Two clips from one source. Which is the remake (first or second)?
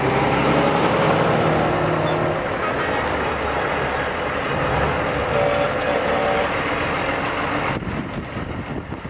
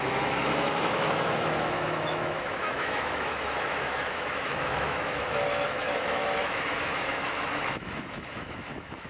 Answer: second